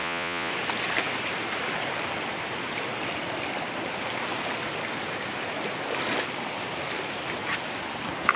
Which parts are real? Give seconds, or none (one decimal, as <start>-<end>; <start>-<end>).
0.5-8.4